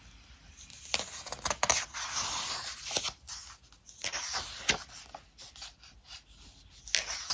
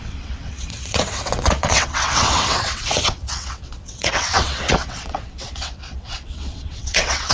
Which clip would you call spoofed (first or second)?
second